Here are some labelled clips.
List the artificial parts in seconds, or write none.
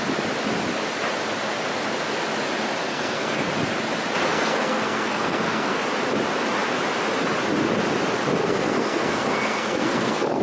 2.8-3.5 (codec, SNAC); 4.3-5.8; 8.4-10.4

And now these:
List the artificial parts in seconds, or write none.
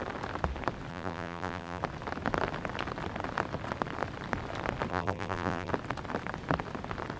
0.9-1.8 (vocoder, BigVGAN v2); 4.9-5.7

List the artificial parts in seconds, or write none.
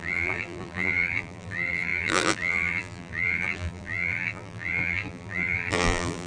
0.0-6.3 (vocoder, BigVGAN v2)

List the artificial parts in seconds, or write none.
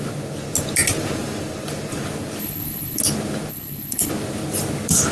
2.4-3.0 (codec, HILCodec); 3.5-4.1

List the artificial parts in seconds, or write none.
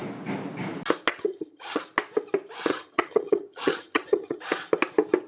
1.1-1.8 (vocoder, HiFi-GAN); 2.7-4.4